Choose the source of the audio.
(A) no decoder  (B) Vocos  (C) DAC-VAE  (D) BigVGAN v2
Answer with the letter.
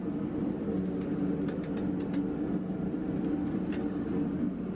A